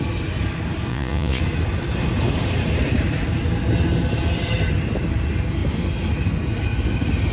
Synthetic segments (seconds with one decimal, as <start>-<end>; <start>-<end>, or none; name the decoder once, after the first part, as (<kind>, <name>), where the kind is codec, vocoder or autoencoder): 0.9-1.4 (vocoder, Vocos)